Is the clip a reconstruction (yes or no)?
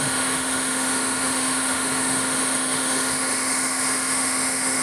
yes